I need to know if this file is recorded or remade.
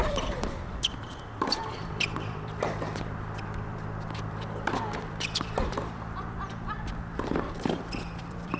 remade